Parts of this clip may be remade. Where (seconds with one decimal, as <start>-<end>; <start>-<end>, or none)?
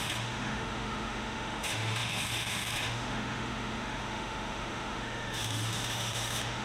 0.0-6.6